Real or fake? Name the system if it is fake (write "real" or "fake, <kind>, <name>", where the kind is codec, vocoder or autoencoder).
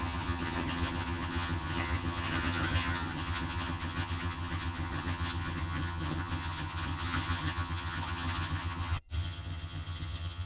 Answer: fake, vocoder, HiFi-GAN